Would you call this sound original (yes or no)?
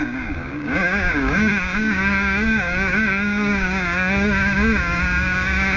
no